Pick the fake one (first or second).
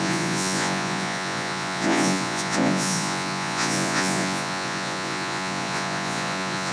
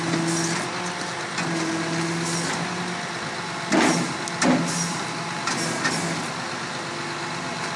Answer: first